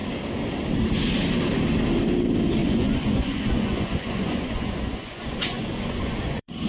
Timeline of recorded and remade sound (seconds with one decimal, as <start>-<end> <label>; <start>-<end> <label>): 0.0-2.6 recorded; 2.6-6.7 remade